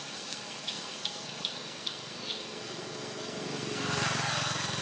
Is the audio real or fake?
fake